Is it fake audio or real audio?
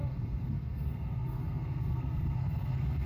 fake